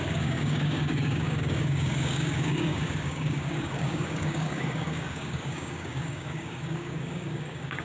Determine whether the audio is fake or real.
fake